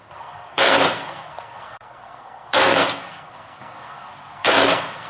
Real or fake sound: fake